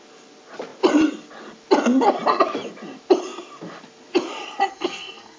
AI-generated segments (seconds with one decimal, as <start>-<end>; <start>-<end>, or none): 4.7-5.4